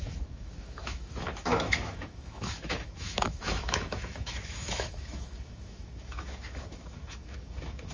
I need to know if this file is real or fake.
fake